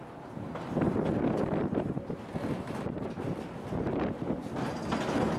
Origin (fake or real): real